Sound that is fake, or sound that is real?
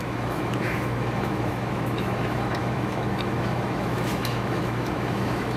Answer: fake